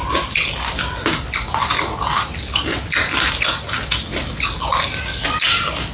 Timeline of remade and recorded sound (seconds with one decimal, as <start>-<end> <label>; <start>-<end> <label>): 0.0-5.9 recorded